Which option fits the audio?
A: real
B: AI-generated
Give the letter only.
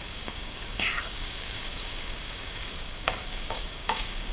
B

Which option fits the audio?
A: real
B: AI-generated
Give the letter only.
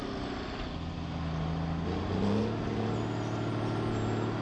A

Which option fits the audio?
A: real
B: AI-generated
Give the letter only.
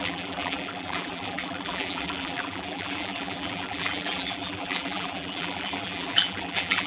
B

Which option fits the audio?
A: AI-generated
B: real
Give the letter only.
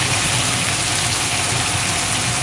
B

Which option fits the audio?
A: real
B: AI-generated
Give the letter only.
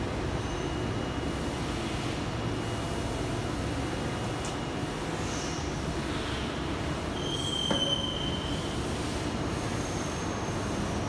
A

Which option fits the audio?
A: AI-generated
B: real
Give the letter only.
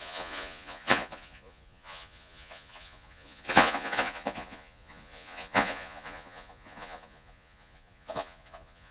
A